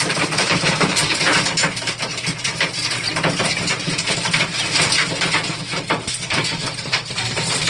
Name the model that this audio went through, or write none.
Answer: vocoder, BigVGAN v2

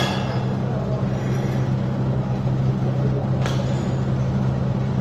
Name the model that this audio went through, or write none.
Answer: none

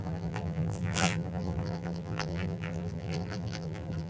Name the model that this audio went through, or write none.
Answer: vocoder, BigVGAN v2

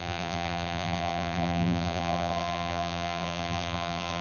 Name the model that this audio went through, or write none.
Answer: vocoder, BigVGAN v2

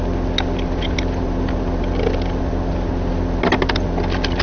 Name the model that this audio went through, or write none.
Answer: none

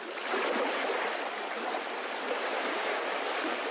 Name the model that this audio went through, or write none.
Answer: none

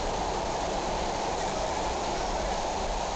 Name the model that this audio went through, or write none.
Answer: vocoder, BigVGAN v2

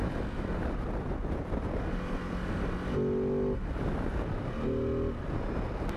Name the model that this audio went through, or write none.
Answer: none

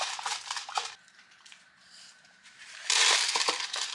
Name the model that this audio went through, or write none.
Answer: vocoder, BigVGAN v2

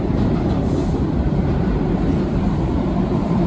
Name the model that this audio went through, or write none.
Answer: vocoder, BigVGAN v2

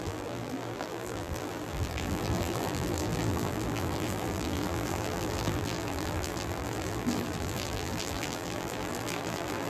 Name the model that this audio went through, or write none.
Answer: vocoder, BigVGAN v2